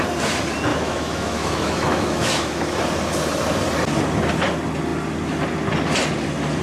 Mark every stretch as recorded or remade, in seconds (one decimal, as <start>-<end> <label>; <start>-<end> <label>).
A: 0.0-0.7 recorded; 0.7-2.8 remade; 2.8-6.6 recorded